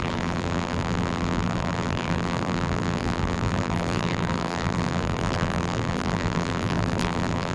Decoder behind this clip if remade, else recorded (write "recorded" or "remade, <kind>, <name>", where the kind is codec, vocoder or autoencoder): remade, vocoder, BigVGAN v2